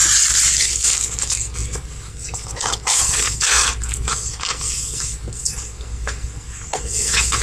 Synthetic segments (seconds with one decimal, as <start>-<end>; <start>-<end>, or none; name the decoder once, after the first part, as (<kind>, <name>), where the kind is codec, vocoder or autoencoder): 0.6-7.4 (codec, SNAC)